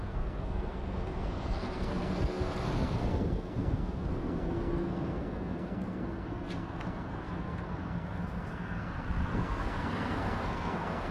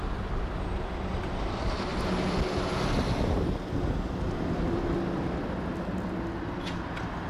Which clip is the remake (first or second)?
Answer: first